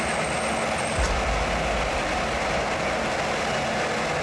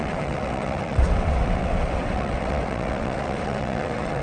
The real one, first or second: first